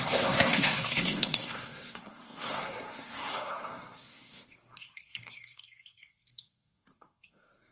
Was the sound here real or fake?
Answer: fake